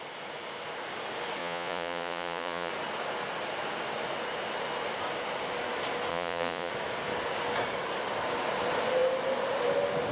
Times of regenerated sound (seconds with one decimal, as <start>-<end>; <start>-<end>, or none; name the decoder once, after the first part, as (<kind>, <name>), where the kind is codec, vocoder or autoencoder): 1.4-2.7 (vocoder, Vocos); 6.1-6.7